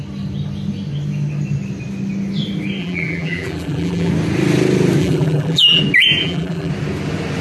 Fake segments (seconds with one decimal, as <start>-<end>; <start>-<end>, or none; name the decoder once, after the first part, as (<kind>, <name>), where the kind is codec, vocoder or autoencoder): 2.8-4.1 (vocoder, BigVGAN v2); 5.0-5.8; 6.2-6.7